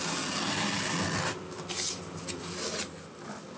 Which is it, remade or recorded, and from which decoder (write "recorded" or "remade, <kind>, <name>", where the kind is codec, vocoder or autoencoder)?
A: recorded